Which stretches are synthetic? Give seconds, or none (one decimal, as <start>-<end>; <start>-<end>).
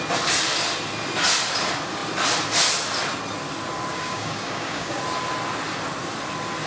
3.9-5.0